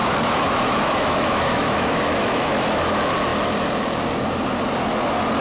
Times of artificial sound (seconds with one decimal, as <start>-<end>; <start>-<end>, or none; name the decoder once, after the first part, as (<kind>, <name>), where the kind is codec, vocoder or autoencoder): 0.0-2.9 (autoencoder, DAC-VAE)